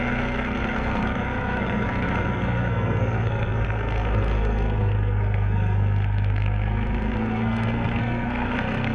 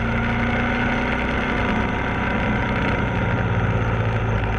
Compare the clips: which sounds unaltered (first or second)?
second